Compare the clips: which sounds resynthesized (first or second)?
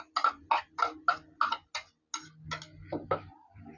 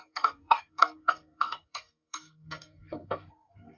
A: second